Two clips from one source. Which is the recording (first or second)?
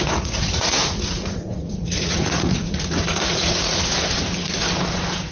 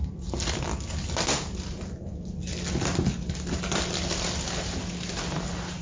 second